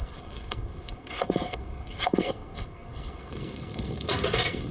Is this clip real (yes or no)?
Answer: no